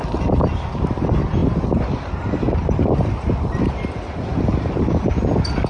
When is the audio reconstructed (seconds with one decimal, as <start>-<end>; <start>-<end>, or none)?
none